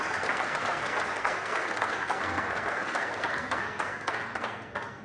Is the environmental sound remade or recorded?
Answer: remade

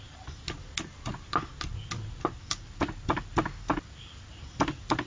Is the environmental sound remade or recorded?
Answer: recorded